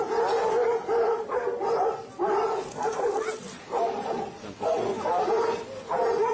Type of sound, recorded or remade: recorded